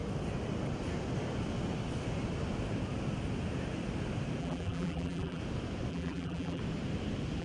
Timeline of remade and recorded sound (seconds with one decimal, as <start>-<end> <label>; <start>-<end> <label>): 0.0-4.4 recorded; 4.4-5.4 remade; 5.4-5.9 recorded; 5.9-6.6 remade; 6.6-7.4 recorded